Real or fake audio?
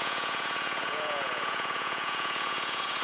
fake